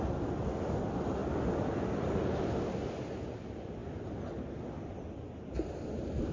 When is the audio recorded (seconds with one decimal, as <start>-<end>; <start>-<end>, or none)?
0.0-6.3